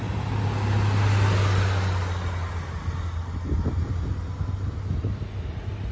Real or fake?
real